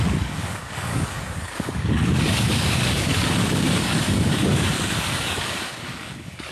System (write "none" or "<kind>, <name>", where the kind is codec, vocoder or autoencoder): codec, DAC